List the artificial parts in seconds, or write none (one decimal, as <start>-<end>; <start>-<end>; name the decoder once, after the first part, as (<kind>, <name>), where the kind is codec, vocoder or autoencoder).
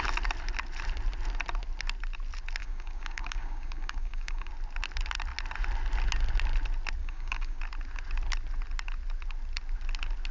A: 2.6-4.5 (codec, DAC); 7.0-7.6